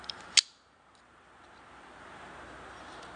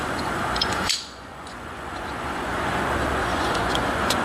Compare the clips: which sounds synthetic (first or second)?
second